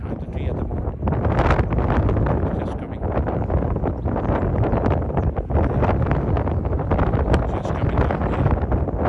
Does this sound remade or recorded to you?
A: recorded